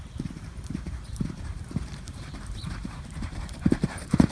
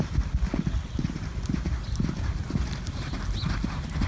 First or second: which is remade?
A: first